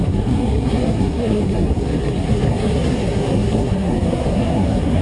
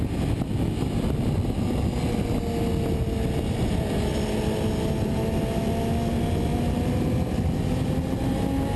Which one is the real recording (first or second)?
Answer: second